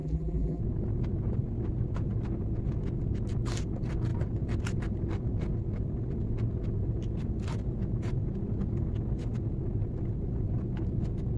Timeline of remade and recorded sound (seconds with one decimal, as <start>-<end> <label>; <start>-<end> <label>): 0.0-0.6 remade; 0.6-11.4 recorded